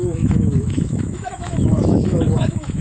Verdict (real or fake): fake